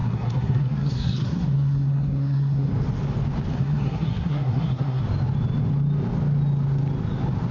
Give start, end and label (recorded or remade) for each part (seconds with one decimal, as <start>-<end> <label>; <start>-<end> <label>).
0.0-2.7 remade; 2.7-3.5 recorded; 3.5-5.0 remade; 5.0-7.5 recorded